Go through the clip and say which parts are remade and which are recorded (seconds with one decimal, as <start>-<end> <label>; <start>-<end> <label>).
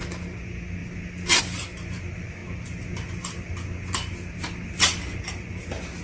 0.0-6.0 recorded